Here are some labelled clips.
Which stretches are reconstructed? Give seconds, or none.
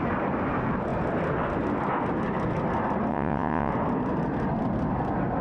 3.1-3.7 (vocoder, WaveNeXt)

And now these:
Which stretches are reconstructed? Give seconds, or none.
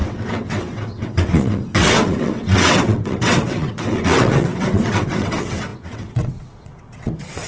0.0-7.5 (vocoder, WaveNeXt)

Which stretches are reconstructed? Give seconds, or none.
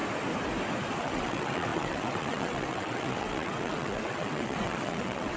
1.0-5.4 (vocoder, WaveNeXt)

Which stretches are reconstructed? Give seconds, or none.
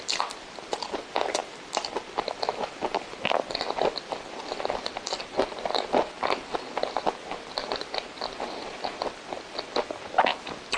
none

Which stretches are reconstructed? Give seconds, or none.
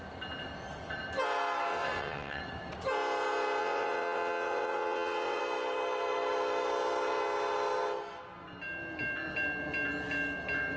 1.7-2.4 (vocoder, WaveNeXt); 3.6-5.4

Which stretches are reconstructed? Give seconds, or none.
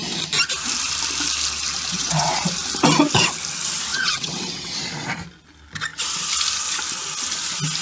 1.9-2.4 (vocoder, WaveNeXt); 3.9-4.8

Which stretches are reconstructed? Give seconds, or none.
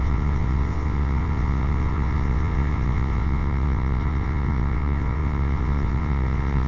0.0-6.7 (vocoder, WaveNeXt)